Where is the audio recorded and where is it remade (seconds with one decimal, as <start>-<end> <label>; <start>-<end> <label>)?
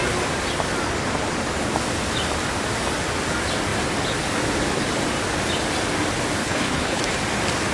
0.0-6.4 recorded; 6.4-7.0 remade; 7.0-7.7 recorded